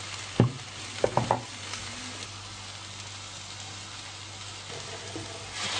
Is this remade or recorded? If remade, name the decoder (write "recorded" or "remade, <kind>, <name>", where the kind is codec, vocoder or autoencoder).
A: recorded